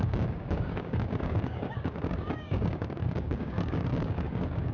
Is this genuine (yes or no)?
no